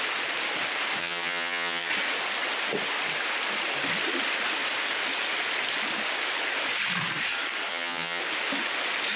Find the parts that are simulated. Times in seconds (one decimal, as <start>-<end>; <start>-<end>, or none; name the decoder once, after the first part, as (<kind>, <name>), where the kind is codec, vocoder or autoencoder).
1.0-1.9 (vocoder, HiFi-GAN); 7.7-8.2